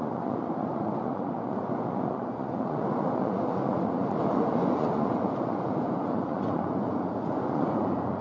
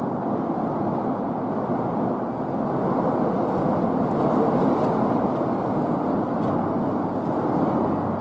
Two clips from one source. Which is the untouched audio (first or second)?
second